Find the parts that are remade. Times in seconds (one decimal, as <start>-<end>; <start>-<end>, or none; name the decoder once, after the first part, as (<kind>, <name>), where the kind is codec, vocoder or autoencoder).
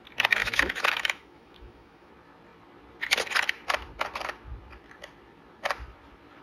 0.4-2.1 (autoencoder, DAC-VAE)